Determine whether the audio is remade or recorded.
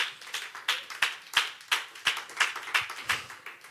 recorded